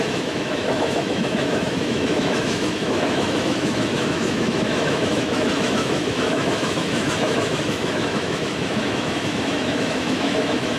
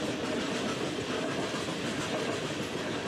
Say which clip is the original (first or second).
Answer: second